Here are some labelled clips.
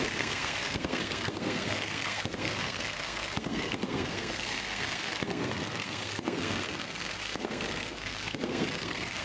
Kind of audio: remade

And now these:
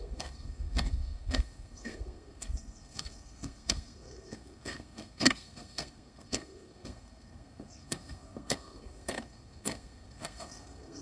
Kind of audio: remade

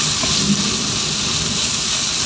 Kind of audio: recorded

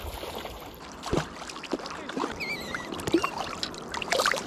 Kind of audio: recorded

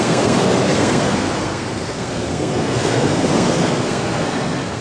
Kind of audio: remade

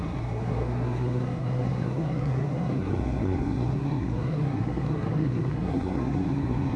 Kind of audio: remade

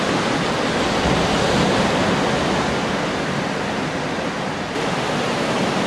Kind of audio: recorded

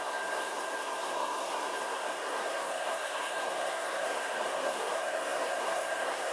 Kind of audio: remade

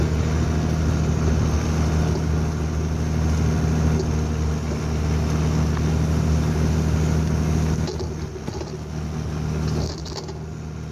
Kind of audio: recorded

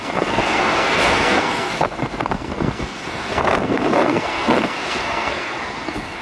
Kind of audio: remade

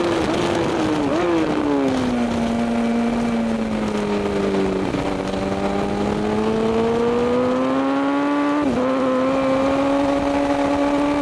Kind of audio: recorded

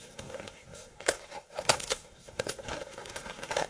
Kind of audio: remade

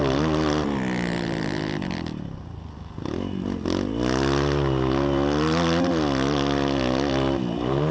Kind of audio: recorded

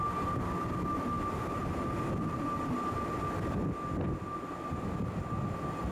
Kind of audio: recorded